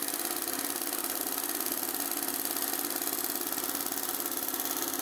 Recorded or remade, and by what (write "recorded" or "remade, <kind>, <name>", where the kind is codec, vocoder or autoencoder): recorded